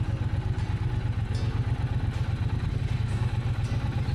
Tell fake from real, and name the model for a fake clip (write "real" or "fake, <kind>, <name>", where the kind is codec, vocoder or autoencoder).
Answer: real